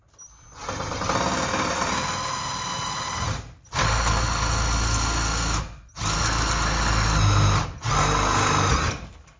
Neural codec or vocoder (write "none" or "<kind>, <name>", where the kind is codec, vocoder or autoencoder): none